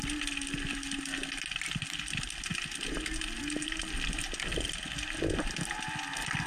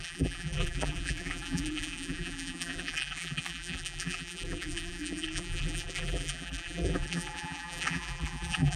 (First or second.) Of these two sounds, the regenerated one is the second